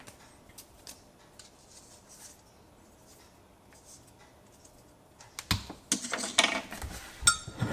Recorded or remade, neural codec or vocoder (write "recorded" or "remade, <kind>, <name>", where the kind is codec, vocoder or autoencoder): recorded